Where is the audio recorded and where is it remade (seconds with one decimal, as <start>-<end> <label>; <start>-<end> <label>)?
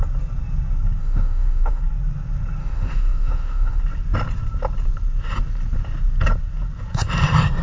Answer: 0.0-1.0 recorded; 1.0-1.8 remade; 1.8-2.6 recorded; 2.6-3.8 remade; 3.8-7.6 recorded